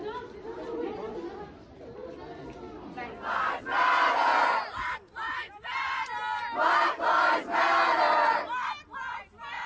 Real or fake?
real